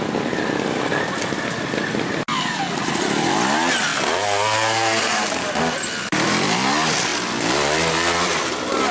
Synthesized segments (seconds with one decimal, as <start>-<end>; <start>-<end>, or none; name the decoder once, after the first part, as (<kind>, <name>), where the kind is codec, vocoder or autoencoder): none